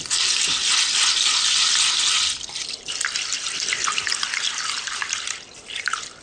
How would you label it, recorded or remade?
recorded